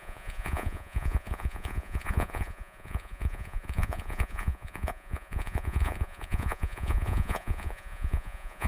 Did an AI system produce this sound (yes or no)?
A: yes